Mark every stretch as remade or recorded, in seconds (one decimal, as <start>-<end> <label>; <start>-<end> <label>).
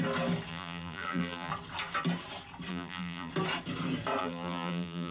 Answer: 0.0-0.5 recorded; 0.5-1.5 remade; 1.5-2.7 recorded; 2.7-3.3 remade; 3.3-4.2 recorded; 4.2-5.1 remade